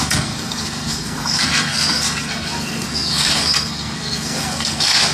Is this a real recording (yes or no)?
no